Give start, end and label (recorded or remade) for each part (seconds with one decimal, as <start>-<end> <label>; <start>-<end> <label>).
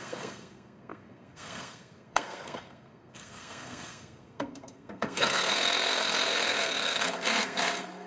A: 0.0-8.1 remade